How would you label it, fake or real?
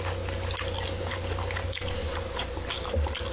real